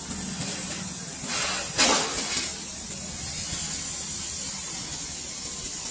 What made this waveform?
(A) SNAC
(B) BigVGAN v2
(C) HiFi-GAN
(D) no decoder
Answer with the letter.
D